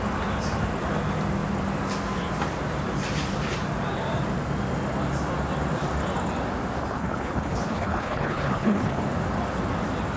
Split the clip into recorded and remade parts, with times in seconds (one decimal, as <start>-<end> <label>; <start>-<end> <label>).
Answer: 0.0-6.8 recorded; 6.8-9.0 remade; 9.0-10.2 recorded